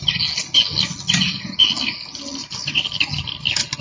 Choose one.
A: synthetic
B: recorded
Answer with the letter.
B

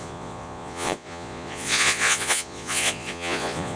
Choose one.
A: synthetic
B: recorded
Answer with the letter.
A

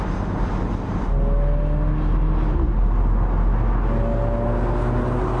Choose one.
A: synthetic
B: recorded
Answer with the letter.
B